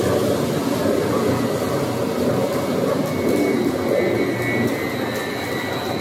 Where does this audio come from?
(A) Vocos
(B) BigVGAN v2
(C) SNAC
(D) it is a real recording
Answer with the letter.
D